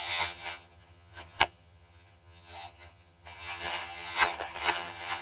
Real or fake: fake